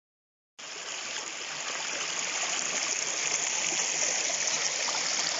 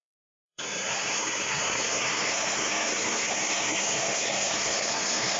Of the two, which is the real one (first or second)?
first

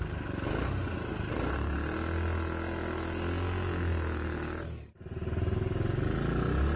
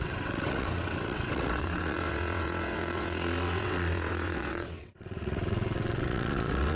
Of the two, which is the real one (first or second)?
first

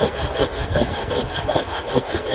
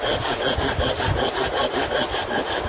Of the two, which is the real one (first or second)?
second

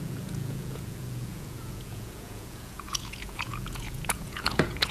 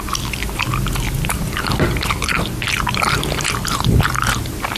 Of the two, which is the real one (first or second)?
second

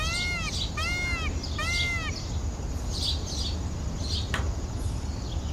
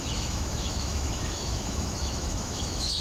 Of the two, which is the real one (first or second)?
first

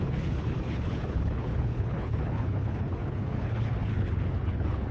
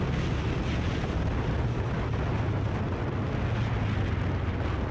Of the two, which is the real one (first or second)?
second